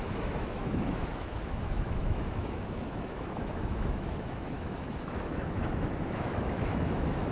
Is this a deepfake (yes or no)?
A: yes